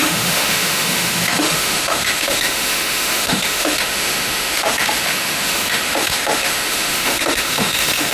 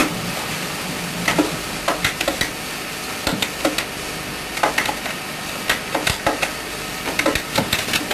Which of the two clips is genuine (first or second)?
second